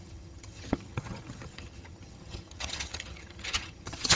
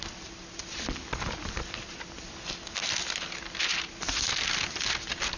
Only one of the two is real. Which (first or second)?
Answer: second